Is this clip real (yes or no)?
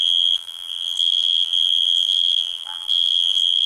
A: no